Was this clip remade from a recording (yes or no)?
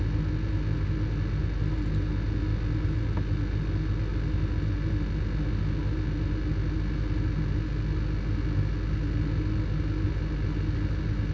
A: no